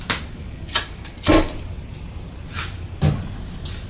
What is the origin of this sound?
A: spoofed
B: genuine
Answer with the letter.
B